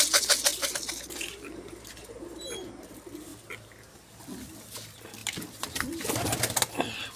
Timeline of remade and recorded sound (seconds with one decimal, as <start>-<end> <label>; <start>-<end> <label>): 0.0-0.5 recorded; 0.5-1.5 remade; 1.5-5.2 recorded; 5.2-6.0 remade; 6.0-7.2 recorded